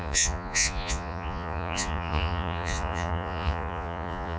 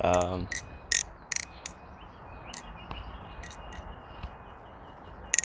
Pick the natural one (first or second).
second